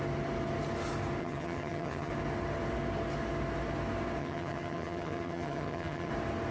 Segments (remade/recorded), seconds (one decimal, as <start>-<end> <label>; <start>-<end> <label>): 0.0-1.2 recorded; 1.2-2.1 remade; 2.1-4.2 recorded; 4.2-6.1 remade; 6.1-6.5 recorded